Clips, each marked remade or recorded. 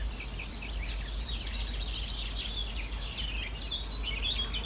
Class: recorded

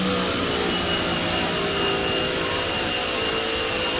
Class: recorded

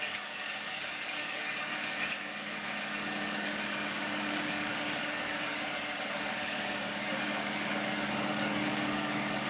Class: remade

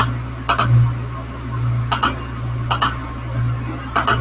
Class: recorded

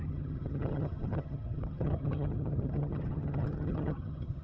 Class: remade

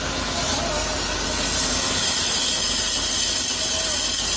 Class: recorded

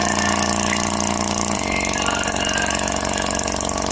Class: recorded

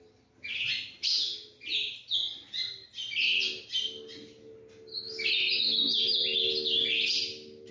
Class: recorded